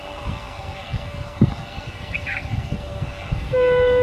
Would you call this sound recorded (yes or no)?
no